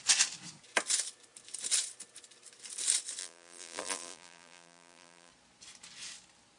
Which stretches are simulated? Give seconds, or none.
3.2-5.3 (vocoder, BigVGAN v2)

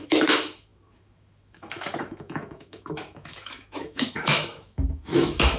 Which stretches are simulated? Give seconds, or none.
0.0-5.6 (autoencoder, DAC-VAE)

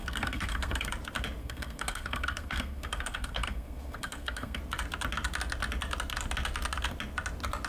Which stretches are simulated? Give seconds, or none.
0.0-0.9 (codec, SNAC); 1.4-4.6